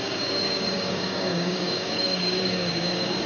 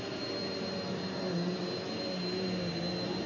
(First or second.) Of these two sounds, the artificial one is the first